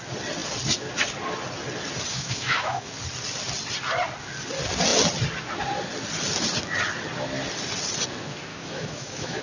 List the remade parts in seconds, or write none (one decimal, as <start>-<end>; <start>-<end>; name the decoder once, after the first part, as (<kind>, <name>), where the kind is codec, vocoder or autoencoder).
2.1-2.9 (autoencoder, DAC-VAE); 8.5-9.4